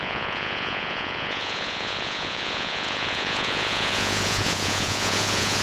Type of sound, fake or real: fake